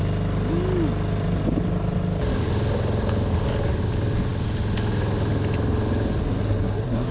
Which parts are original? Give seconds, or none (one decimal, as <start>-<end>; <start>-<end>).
0.0-6.2